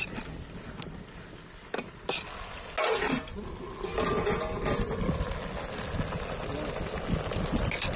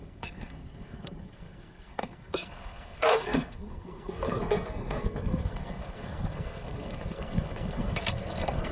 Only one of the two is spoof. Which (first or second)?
second